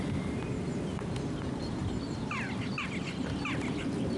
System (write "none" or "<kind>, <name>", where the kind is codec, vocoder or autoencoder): none